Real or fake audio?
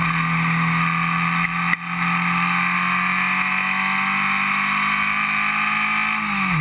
real